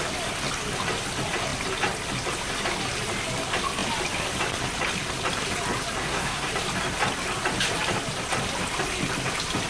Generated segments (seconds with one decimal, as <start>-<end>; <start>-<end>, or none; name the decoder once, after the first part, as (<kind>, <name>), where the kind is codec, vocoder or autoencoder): 6.0-6.5 (codec, SNAC)